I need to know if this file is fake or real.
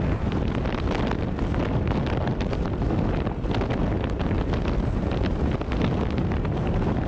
real